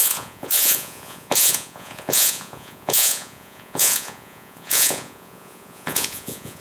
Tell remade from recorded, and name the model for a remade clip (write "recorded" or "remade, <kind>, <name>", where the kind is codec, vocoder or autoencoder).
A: remade, vocoder, Vocos